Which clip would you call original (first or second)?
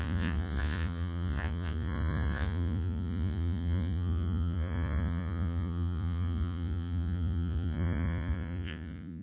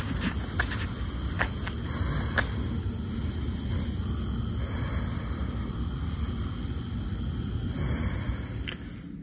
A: second